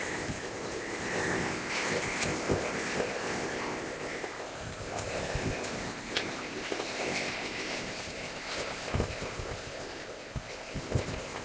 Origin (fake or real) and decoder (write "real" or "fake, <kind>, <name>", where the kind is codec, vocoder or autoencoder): fake, codec, ZipCodec